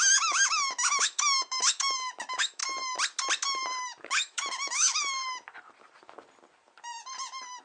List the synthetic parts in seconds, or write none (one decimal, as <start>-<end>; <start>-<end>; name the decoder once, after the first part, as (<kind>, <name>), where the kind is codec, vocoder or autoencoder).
0.0-2.6 (autoencoder, DAC-VAE); 4.0-5.2